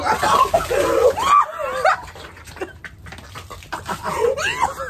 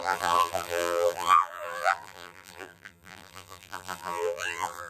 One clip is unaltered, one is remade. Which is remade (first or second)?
second